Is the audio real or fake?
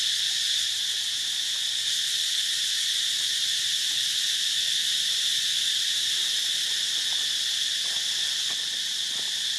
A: real